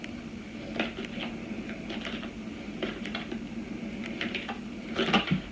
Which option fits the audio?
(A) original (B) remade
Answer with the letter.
A